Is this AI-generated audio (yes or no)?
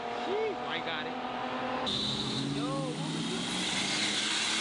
no